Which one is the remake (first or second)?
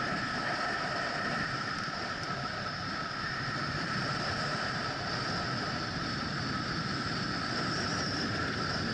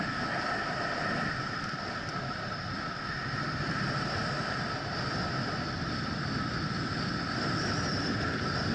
first